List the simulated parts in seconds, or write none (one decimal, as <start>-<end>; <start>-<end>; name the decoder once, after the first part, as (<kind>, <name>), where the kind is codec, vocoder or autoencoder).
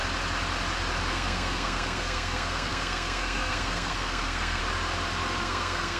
1.1-4.6 (codec, SNAC); 5.4-6.0